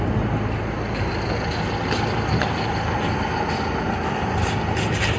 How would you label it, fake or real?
real